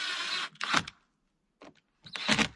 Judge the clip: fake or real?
real